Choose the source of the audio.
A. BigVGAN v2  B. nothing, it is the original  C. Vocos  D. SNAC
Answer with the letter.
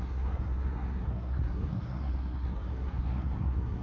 D